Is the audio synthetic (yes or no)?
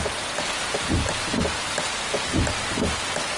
no